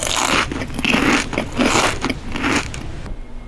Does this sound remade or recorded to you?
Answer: recorded